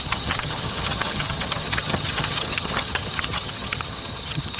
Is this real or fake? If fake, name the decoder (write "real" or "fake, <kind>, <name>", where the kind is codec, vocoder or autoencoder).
fake, vocoder, HiFi-GAN